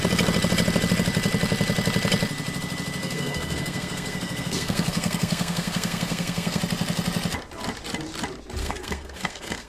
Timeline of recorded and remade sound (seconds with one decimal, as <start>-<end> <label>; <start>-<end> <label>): 0.0-3.0 recorded; 3.0-6.6 remade; 6.6-8.6 recorded; 8.6-9.7 remade